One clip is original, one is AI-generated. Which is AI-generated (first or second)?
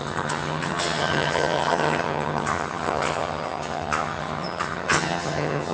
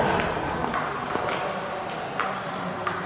first